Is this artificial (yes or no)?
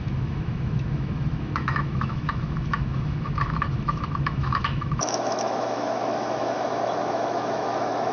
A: yes